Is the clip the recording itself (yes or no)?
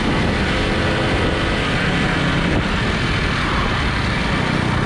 yes